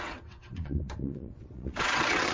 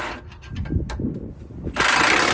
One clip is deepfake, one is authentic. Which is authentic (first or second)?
second